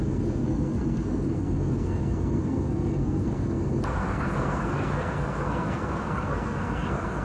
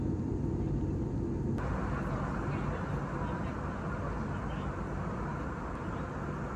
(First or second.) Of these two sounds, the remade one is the first